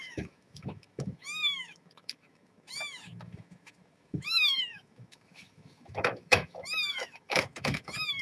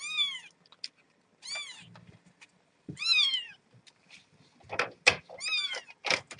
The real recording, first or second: second